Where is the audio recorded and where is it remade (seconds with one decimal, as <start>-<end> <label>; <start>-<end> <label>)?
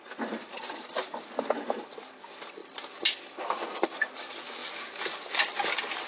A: 0.0-0.4 recorded; 0.4-1.4 remade; 1.4-6.1 recorded